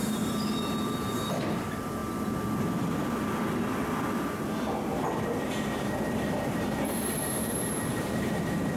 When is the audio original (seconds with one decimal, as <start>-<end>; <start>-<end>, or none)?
2.0-5.7